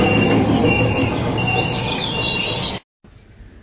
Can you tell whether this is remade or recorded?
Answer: recorded